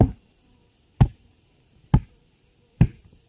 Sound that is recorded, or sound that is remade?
recorded